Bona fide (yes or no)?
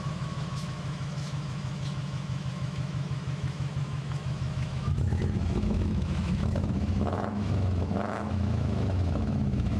no